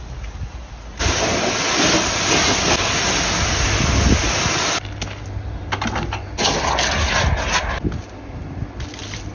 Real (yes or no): yes